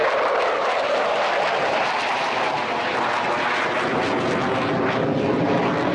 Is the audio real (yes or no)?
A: yes